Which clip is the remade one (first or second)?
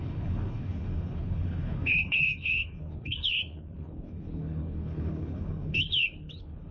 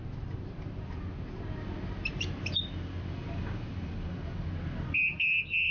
first